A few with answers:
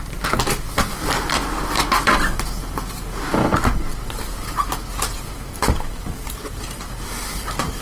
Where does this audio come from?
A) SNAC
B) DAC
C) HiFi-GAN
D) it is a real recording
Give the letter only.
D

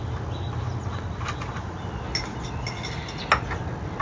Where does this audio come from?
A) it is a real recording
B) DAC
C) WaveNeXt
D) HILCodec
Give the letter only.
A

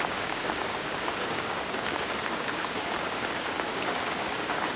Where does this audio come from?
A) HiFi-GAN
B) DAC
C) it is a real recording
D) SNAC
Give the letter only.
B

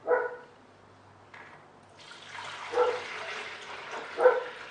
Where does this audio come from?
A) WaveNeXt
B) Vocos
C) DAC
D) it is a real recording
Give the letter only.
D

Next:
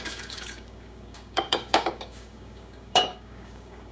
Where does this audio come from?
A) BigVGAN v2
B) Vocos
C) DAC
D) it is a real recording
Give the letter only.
C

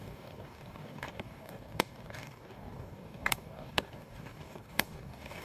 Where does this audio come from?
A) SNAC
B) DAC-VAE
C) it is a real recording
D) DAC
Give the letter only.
D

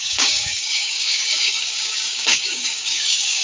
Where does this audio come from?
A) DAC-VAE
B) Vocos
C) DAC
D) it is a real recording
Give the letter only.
C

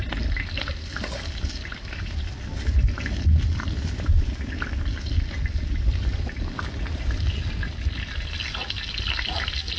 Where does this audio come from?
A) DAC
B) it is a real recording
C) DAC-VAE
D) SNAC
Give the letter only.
B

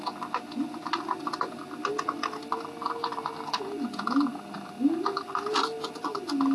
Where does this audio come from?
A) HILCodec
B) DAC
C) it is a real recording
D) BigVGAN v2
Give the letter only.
C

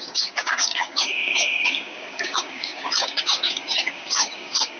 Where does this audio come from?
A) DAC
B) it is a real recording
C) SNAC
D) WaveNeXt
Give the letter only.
A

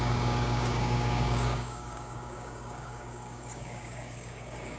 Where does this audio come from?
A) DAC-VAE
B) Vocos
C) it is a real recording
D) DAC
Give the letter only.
D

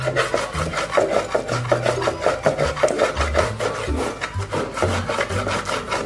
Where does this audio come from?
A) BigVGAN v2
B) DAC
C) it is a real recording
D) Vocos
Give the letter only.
C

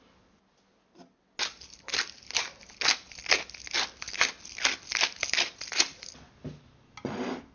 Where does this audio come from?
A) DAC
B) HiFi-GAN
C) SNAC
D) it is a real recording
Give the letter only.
D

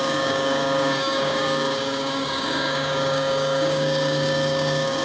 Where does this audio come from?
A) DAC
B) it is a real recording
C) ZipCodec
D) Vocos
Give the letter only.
A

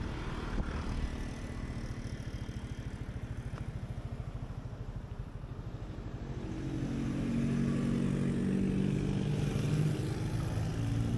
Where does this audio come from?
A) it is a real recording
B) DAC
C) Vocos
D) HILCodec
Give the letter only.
A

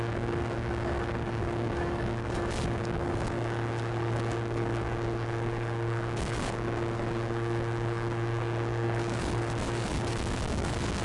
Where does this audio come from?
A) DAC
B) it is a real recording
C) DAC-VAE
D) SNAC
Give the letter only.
A